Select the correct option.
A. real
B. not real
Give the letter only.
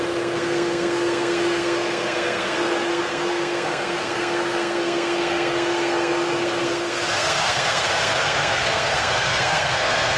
B